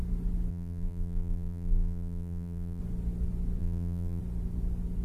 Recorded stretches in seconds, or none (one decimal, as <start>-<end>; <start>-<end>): 0.0-0.5; 2.8-3.6; 4.2-5.0